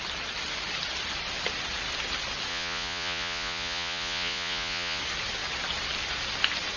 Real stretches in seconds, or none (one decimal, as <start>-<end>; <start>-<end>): 0.0-2.5; 5.0-6.8